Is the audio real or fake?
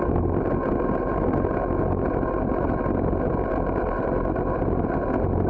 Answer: real